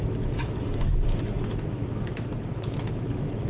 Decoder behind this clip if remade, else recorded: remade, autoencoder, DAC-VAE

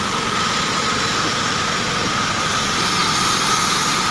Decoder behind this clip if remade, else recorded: recorded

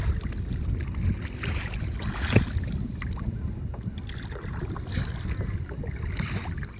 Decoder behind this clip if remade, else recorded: recorded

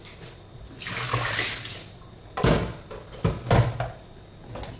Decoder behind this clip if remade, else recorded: recorded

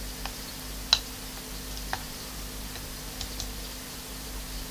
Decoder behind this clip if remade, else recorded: recorded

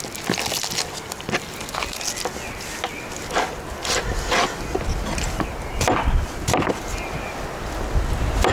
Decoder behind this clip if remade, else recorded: recorded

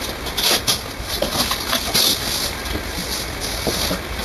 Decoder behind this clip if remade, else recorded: recorded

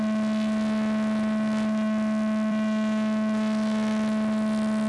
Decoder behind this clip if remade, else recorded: recorded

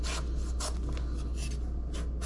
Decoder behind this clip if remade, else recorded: recorded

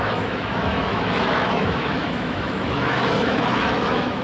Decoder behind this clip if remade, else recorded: remade, autoencoder, DAC-VAE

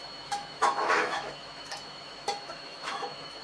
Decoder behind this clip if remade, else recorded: remade, autoencoder, DAC-VAE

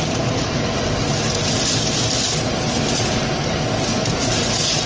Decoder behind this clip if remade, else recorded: recorded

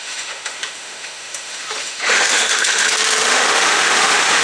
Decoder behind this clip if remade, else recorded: remade, autoencoder, DAC-VAE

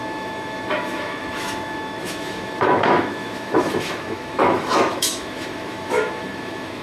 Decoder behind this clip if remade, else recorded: remade, autoencoder, DAC-VAE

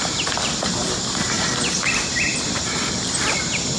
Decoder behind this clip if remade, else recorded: recorded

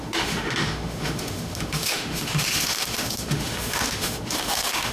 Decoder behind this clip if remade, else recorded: remade, autoencoder, DAC-VAE